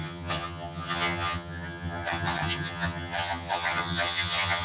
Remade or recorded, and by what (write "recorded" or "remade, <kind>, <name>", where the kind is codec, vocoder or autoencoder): remade, vocoder, HiFi-GAN